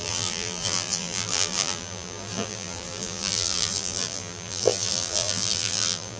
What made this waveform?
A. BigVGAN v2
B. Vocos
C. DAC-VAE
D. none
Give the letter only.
A